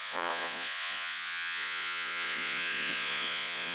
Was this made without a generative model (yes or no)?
no